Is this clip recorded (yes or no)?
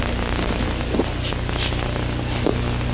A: yes